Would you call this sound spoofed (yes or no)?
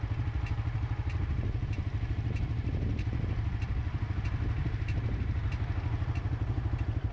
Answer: no